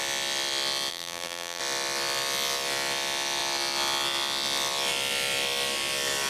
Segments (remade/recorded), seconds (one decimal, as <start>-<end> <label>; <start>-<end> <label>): 0.0-0.9 recorded; 0.9-1.6 remade; 1.6-6.3 recorded